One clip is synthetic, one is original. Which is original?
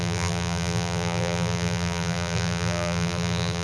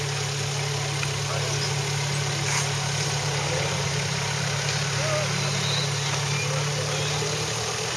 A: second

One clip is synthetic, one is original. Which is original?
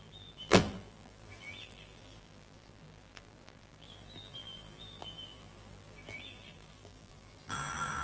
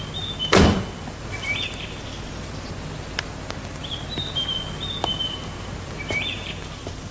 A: second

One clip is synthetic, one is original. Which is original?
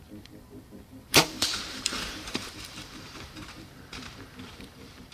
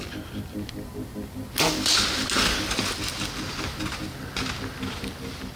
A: second